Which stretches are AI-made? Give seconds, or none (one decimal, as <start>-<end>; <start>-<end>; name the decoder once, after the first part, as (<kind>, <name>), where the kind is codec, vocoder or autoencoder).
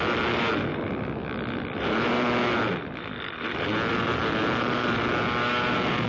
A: none